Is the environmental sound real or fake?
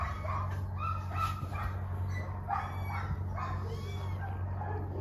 real